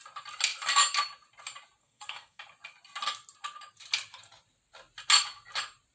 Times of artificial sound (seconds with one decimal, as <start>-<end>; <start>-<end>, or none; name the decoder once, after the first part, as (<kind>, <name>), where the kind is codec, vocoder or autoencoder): 1.8-2.4 (codec, SNAC)

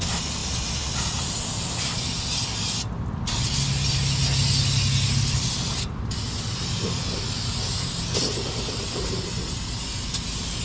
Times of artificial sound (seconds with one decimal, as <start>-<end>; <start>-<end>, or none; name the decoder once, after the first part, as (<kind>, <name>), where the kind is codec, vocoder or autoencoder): none

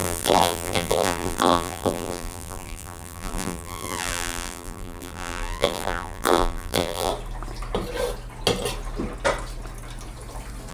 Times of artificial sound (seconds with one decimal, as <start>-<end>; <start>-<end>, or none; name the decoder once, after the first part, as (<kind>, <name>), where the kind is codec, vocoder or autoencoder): 0.0-7.1 (vocoder, BigVGAN v2)